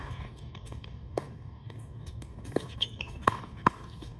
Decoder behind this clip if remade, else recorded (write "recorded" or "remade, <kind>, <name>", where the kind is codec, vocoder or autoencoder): remade, codec, DAC